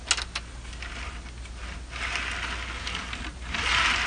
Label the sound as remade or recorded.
recorded